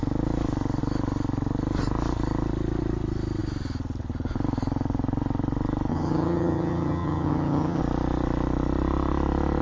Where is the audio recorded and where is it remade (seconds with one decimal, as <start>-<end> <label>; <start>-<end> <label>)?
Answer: 0.0-5.9 recorded; 5.9-7.8 remade; 7.8-9.6 recorded